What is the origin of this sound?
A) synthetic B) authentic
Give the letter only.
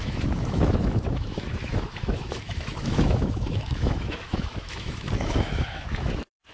A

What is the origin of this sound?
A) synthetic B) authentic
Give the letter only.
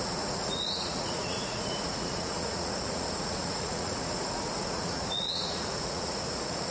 A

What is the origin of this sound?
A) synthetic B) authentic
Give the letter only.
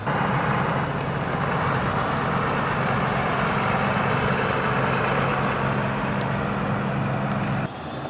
B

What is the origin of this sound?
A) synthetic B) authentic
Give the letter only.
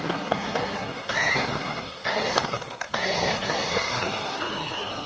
A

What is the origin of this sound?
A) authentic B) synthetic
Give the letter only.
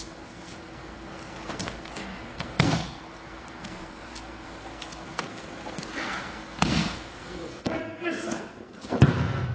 B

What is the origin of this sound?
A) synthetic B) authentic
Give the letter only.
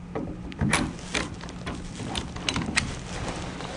A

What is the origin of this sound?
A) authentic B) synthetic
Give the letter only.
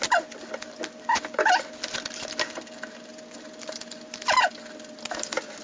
A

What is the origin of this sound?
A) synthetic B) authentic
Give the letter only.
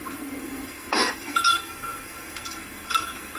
A